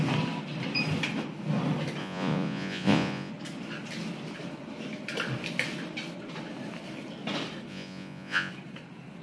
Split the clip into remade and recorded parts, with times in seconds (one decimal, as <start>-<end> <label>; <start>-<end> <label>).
0.0-2.0 recorded; 2.0-3.3 remade; 3.3-7.7 recorded; 7.7-8.5 remade; 8.5-9.2 recorded